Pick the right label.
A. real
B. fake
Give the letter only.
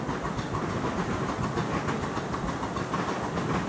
A